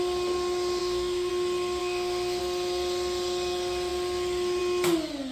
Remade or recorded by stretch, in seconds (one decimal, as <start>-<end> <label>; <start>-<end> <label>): 0.0-0.8 recorded; 0.8-1.3 remade; 1.3-1.8 recorded; 1.8-2.4 remade; 2.4-5.3 recorded